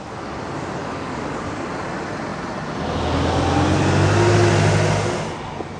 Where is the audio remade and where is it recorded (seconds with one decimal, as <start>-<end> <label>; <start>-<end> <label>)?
0.0-0.8 recorded; 0.8-1.4 remade; 1.4-5.8 recorded